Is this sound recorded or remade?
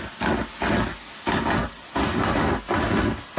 recorded